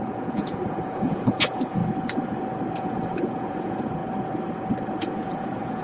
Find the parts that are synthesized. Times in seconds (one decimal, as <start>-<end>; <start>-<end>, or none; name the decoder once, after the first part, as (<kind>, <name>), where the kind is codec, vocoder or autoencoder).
0.0-1.8 (vocoder, Vocos); 2.7-4.0; 5.0-5.8